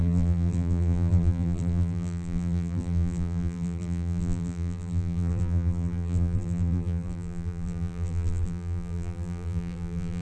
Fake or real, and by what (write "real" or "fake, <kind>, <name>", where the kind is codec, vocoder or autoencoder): fake, vocoder, BigVGAN v2